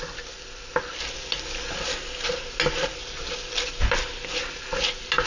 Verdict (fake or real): real